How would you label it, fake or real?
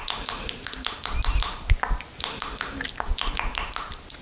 real